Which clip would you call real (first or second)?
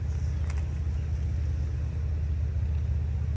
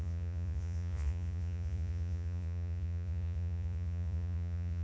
first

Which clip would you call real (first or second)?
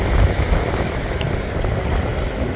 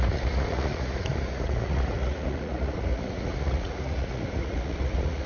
first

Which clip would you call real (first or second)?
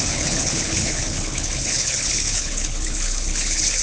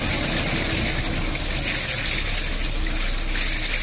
second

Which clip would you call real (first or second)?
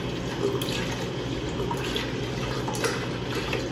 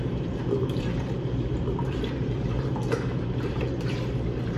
first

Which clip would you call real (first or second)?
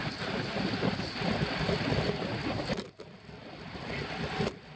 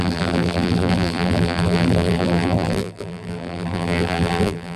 first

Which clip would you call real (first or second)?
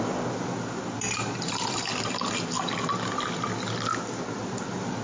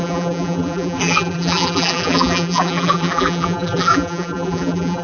first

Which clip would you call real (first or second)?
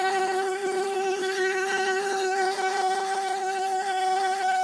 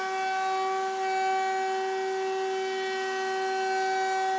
second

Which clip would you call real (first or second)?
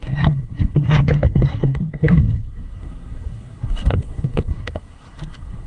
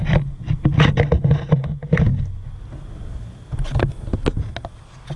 second